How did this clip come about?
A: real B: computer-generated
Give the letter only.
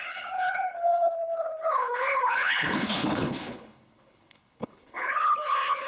B